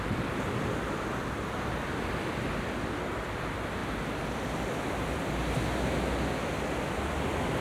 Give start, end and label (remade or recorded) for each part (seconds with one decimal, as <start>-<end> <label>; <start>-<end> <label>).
0.0-7.6 recorded